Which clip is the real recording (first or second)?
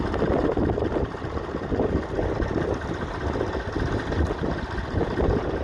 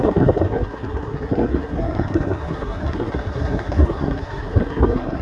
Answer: first